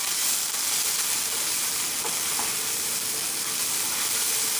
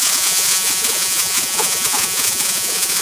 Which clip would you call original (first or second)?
first